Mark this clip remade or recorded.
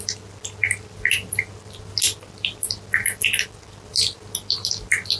recorded